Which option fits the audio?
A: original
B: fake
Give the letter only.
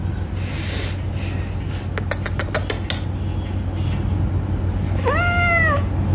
A